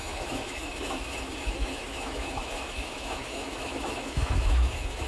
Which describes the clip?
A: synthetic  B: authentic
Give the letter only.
A